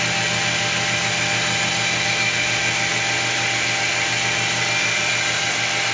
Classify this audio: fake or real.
fake